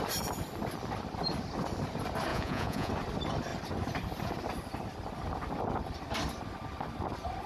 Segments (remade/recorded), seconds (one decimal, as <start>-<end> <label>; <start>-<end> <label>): 0.0-2.3 recorded; 2.3-2.9 remade; 2.9-7.5 recorded